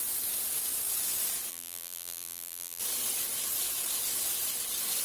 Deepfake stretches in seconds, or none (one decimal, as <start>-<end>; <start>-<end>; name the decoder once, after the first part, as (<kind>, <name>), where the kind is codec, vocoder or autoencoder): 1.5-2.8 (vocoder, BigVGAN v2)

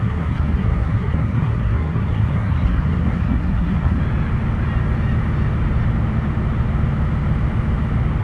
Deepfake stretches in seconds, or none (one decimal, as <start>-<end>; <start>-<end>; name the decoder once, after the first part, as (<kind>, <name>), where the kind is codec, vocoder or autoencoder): 0.0-4.0 (codec, SNAC)

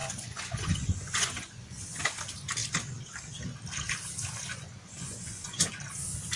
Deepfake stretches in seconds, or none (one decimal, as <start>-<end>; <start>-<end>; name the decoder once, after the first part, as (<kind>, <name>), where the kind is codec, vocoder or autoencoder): 0.0-2.0 (vocoder, Vocos); 4.5-5.7

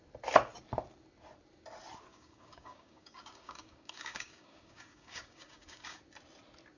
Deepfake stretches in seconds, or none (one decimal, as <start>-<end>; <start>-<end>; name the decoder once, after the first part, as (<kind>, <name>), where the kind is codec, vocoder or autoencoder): 2.1-6.0 (codec, DAC)